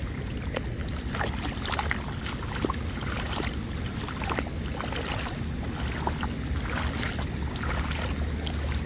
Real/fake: real